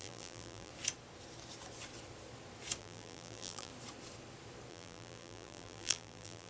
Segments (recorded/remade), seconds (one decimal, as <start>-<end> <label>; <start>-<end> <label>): 0.0-0.7 remade; 0.7-2.8 recorded; 2.8-3.7 remade; 3.7-4.7 recorded; 4.7-6.5 remade